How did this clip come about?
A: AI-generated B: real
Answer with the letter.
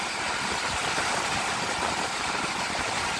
B